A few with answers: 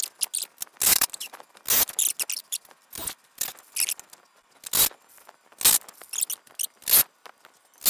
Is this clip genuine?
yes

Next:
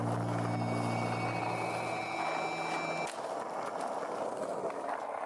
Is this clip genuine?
yes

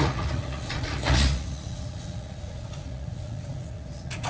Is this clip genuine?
no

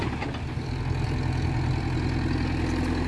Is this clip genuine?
yes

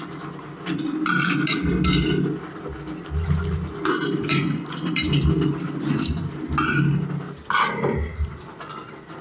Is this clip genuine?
yes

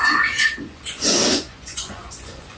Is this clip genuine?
no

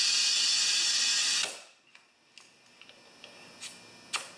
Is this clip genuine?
yes